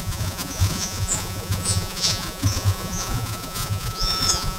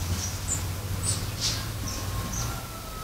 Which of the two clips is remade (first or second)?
first